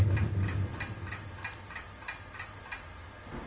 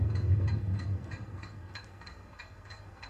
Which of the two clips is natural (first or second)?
first